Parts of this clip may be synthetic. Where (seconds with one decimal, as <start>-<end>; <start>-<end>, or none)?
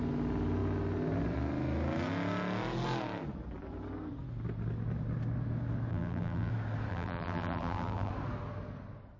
5.9-6.5; 6.9-8.1